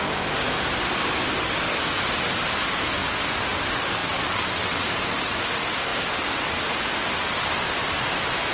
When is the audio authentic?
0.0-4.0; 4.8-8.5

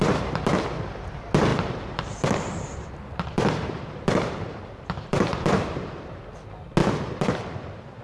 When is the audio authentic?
0.5-1.5; 6.2-6.8

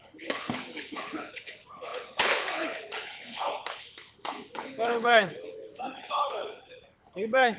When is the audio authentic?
none

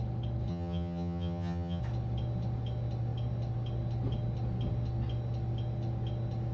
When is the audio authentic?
0.0-0.5; 1.8-6.5

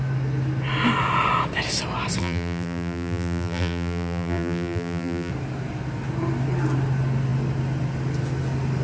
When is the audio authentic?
0.0-2.2; 5.3-8.8